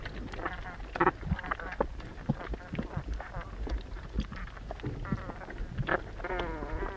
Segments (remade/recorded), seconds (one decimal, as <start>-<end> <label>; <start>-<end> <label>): 0.0-7.0 recorded